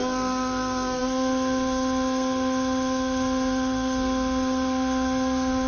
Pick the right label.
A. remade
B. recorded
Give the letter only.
A